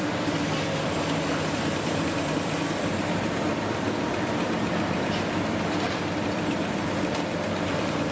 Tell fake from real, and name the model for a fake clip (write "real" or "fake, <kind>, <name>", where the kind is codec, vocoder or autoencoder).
fake, vocoder, BigVGAN v2